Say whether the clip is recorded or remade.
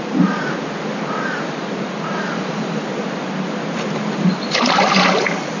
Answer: recorded